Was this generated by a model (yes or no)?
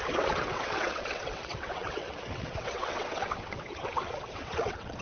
yes